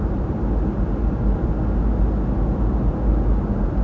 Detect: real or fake real